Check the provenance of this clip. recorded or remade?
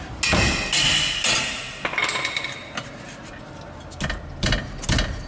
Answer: recorded